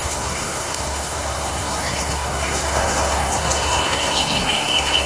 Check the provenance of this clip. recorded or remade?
remade